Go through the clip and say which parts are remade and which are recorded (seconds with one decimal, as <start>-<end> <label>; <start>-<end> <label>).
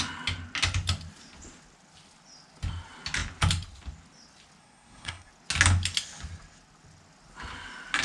0.0-4.6 recorded; 4.6-5.3 remade; 5.3-8.0 recorded